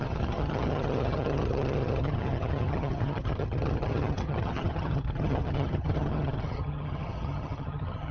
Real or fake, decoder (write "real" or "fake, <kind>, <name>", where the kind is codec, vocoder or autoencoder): fake, vocoder, HiFi-GAN